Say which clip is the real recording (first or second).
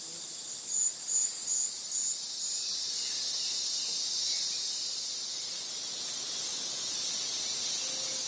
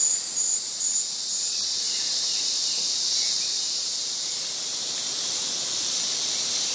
first